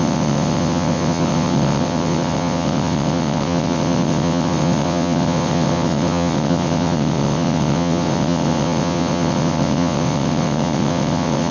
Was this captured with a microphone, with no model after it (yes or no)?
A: no